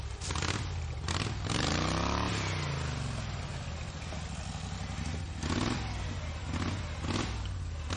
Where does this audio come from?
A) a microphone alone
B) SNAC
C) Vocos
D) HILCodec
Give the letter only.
A